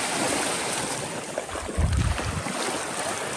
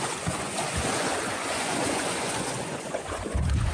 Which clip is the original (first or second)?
first